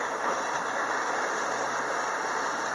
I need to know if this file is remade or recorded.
recorded